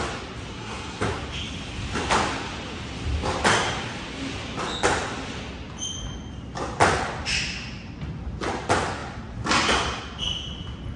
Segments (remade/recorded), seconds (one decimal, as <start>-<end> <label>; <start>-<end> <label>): 0.0-0.5 recorded; 0.5-1.1 remade; 1.1-11.0 recorded